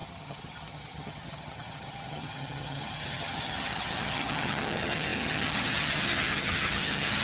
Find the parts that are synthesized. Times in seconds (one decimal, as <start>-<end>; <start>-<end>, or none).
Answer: 0.0-7.2